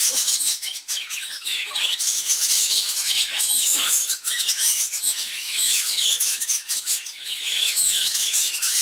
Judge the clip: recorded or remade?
remade